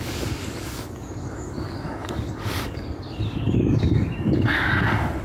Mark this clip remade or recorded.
remade